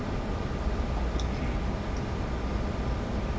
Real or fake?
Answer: real